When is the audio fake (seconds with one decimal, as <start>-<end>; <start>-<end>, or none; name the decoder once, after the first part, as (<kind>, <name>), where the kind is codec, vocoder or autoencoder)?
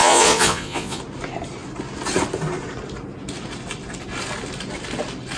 0.0-1.0 (vocoder, Vocos)